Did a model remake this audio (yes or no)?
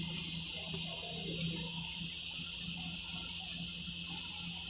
no